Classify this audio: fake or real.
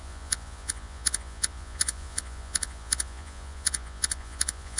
fake